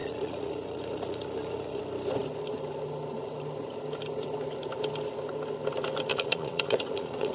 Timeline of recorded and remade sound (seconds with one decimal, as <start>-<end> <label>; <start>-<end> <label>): 0.0-1.8 remade; 1.8-6.1 recorded; 6.1-7.3 remade